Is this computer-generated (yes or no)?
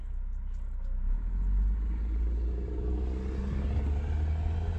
no